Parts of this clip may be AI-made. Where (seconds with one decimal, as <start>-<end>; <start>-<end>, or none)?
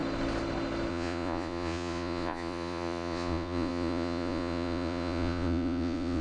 0.9-6.2